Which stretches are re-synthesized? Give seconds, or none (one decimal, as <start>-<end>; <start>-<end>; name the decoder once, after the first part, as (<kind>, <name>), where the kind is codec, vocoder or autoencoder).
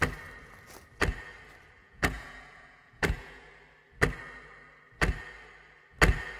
1.8-3.5 (vocoder, Vocos)